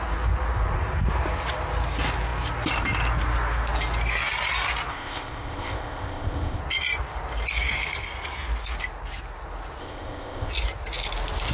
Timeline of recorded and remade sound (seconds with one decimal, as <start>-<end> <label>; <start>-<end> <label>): 0.0-4.9 recorded; 4.9-6.6 remade; 6.6-9.8 recorded; 9.8-10.5 remade; 10.5-11.5 recorded